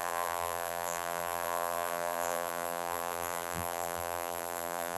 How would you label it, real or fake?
fake